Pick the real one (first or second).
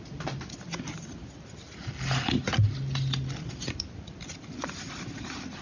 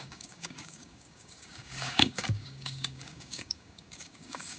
first